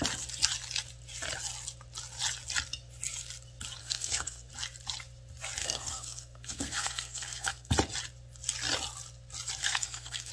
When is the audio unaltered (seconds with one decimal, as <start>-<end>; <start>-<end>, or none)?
0.0-3.8; 4.5-5.6; 7.7-9.6